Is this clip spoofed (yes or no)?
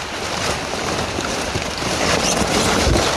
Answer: no